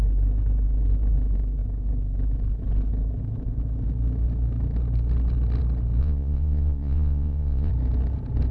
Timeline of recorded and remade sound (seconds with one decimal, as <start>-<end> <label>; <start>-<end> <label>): 0.0-6.0 recorded; 6.0-7.7 remade; 7.7-8.5 recorded